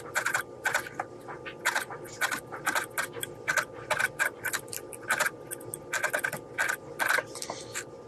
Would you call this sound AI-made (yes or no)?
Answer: no